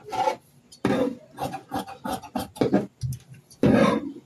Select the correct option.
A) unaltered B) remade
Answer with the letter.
A